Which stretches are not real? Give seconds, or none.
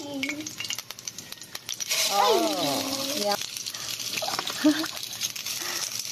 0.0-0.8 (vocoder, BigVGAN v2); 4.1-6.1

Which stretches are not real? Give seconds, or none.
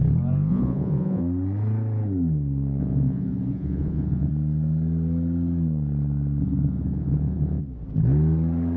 0.5-1.2 (vocoder, Vocos); 2.8-4.3; 6.4-7.6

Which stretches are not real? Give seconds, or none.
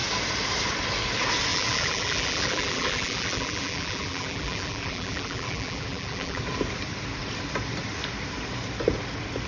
1.5-6.4 (vocoder, BigVGAN v2)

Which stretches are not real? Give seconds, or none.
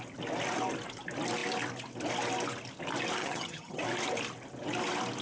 3.2-3.8 (vocoder, HiFi-GAN)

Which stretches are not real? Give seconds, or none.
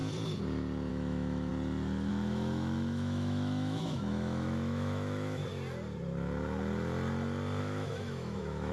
0.9-1.5 (autoencoder, DAC-VAE); 2.1-5.4; 7.6-8.7